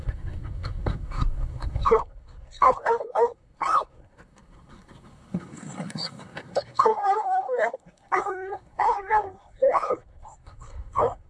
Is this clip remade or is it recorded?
remade